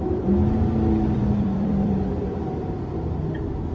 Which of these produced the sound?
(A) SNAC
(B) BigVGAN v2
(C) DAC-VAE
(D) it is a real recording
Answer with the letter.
B